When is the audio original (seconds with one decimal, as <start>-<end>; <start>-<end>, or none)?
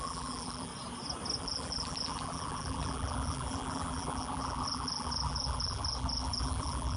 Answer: 0.7-1.4